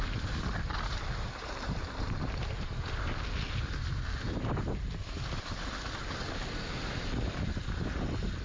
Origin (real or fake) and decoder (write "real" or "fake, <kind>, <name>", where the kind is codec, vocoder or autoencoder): real